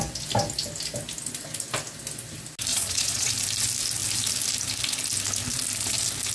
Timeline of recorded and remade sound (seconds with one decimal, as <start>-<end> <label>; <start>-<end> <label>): 0.0-2.7 recorded; 2.7-3.3 remade; 3.3-6.3 recorded